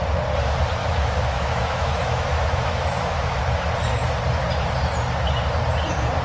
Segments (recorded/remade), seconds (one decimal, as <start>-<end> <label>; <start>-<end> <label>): 0.0-0.8 recorded; 0.8-3.4 remade; 3.4-6.2 recorded